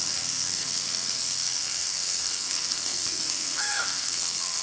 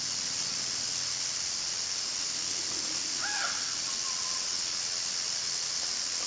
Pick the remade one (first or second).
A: first